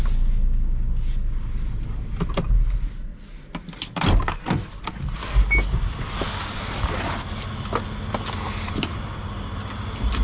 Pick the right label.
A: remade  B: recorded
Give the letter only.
B